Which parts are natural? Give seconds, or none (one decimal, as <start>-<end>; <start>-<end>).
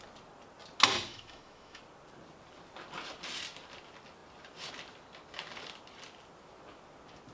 0.0-1.1; 1.8-7.3